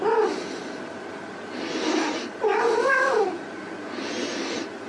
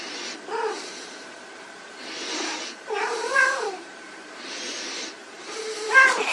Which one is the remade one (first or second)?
second